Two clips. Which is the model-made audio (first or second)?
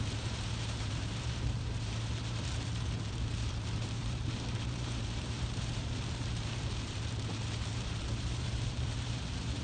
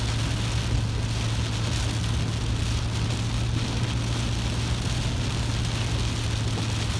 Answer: first